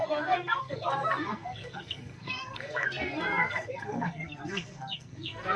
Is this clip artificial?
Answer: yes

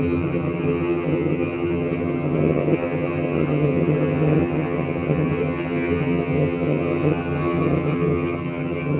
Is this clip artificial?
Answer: yes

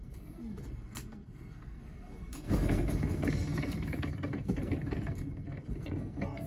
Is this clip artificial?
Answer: yes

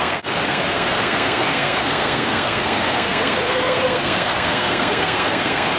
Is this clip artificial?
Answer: yes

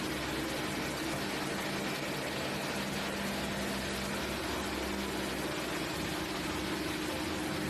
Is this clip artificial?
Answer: no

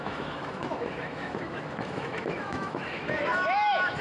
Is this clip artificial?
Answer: yes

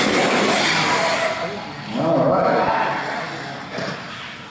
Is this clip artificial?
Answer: no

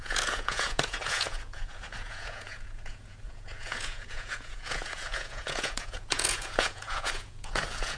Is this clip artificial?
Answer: yes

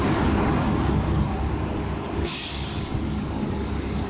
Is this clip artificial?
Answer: yes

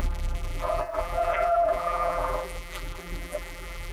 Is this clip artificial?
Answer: yes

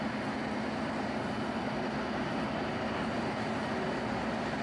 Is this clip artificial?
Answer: no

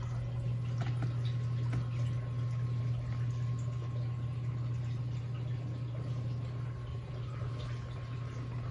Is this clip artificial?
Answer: no